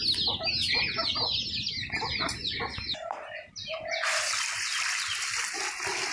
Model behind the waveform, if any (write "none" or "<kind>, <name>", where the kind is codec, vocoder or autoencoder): none